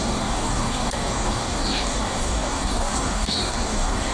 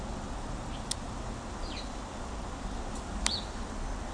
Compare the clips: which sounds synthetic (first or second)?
first